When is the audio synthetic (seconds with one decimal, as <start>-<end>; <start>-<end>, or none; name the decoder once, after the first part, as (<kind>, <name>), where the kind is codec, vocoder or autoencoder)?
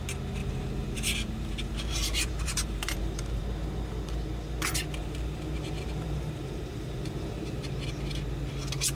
0.4-3.4 (vocoder, BigVGAN v2); 5.0-7.6